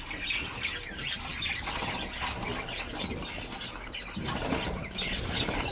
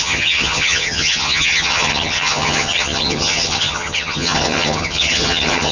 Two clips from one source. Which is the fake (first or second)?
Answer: second